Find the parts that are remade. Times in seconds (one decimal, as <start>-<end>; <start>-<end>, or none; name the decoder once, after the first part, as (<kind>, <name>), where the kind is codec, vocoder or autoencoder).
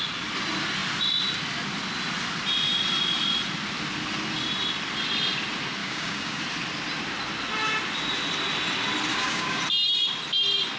5.8-6.4 (codec, DAC); 9.1-9.6